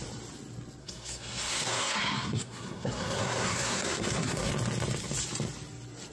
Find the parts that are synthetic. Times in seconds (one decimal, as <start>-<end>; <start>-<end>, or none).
0.8-4.5